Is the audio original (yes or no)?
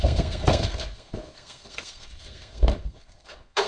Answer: no